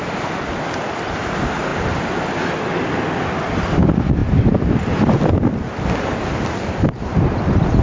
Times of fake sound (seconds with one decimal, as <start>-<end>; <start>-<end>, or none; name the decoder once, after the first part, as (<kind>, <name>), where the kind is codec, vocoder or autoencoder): none